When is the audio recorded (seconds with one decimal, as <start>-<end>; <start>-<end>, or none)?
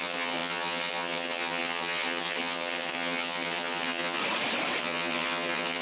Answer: 4.2-4.8